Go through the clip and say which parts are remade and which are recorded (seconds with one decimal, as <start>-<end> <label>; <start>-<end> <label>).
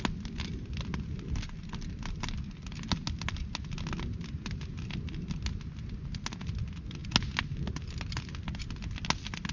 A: 0.0-9.5 recorded